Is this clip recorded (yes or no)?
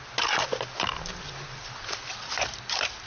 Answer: yes